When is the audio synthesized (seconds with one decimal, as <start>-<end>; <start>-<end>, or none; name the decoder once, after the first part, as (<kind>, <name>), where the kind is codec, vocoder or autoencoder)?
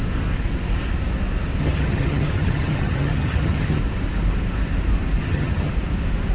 1.6-3.8 (vocoder, HiFi-GAN); 5.2-5.7